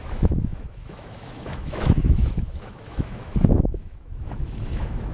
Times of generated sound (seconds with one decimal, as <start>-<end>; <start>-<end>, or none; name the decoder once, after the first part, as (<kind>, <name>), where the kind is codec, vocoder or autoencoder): 0.0-5.1 (autoencoder, DAC-VAE)